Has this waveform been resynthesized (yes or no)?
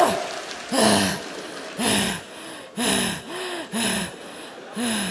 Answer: no